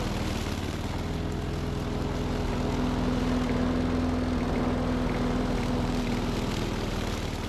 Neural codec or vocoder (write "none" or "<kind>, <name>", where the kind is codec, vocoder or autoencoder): none